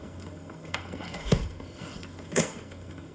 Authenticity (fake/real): fake